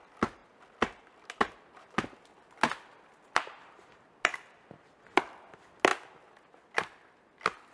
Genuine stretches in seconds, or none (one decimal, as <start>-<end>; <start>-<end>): 0.0-7.7